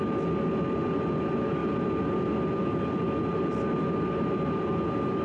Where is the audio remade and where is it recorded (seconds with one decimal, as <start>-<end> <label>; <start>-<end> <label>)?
0.0-5.2 recorded